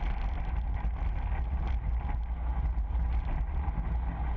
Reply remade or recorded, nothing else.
recorded